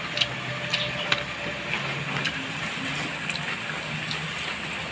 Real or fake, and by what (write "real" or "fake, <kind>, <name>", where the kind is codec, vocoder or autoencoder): real